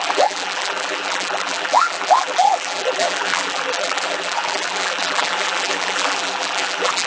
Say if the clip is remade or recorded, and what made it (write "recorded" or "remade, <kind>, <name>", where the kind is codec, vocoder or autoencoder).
remade, vocoder, BigVGAN v2